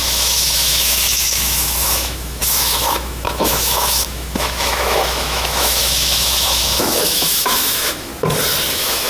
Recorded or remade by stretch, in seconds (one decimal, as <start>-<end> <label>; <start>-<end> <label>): 0.0-8.1 remade; 8.1-8.7 recorded; 8.7-9.1 remade